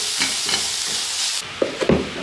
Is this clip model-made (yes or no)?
no